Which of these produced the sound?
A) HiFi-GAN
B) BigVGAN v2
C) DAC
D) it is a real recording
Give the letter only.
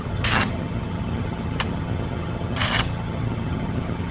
A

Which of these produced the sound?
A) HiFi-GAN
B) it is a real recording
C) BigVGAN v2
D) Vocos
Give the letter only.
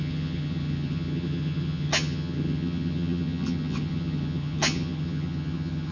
A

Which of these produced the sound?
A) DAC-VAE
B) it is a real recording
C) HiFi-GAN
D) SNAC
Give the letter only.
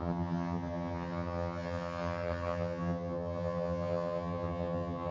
C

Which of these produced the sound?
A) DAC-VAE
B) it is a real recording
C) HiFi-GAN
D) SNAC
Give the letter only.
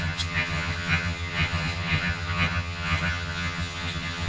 C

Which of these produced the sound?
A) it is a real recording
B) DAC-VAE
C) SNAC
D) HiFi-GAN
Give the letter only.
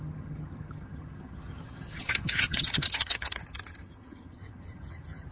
D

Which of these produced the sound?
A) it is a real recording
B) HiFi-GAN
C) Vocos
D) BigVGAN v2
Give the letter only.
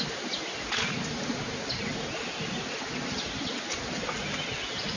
A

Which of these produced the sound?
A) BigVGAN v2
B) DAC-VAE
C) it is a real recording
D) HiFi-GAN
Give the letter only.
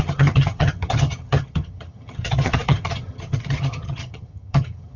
D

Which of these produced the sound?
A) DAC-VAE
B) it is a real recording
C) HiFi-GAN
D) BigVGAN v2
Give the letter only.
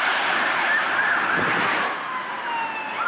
B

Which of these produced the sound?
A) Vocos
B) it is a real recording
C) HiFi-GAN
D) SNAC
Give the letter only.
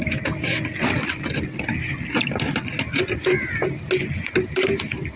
B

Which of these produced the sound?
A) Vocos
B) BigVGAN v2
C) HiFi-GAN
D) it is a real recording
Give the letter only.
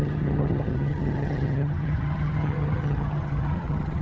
C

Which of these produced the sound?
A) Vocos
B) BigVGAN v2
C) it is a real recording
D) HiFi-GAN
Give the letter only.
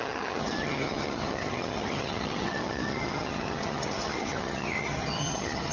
D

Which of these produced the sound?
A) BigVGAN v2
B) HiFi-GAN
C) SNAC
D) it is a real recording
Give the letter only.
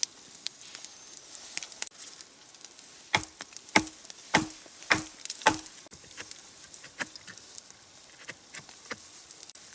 D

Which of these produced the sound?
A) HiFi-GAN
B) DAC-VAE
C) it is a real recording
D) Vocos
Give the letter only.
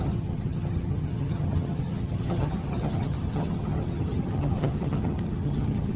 A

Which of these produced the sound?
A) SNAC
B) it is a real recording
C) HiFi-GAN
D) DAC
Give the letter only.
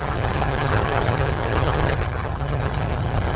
C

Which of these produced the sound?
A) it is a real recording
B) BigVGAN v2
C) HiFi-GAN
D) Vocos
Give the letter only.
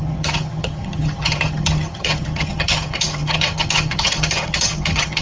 C